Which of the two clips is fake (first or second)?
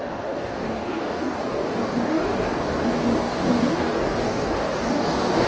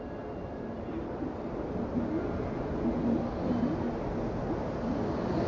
first